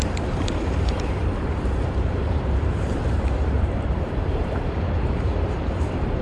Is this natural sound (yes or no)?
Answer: no